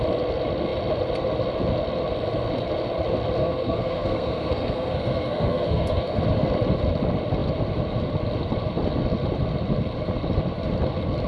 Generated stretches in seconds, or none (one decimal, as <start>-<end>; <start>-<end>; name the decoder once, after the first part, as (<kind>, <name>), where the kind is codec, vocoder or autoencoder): 3.4-6.2 (codec, SNAC)